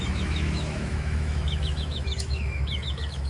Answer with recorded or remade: remade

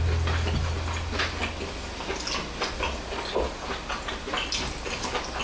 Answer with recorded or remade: recorded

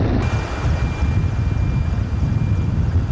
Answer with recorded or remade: recorded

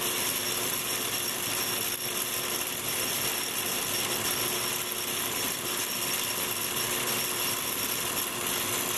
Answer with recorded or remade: recorded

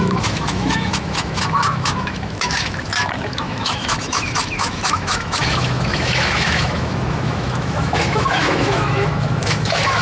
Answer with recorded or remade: remade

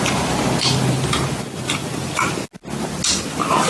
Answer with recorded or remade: recorded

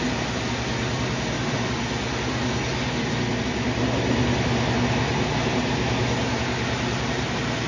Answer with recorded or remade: recorded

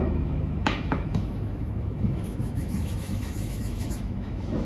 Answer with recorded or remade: remade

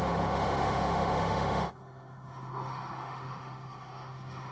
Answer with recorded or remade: remade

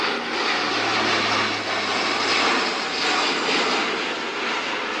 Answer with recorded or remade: recorded